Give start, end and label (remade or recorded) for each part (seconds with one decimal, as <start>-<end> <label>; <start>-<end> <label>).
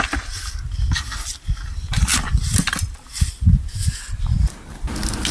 0.0-5.3 recorded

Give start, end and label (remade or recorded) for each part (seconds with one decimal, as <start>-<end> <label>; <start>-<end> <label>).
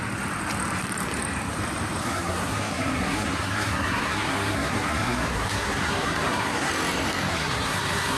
0.0-2.0 recorded; 2.0-6.7 remade; 6.7-7.3 recorded; 7.3-8.2 remade